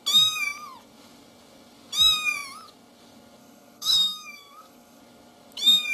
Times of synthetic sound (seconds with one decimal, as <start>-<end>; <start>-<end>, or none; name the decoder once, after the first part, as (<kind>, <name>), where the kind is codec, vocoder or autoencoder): 3.4-5.0 (codec, DAC)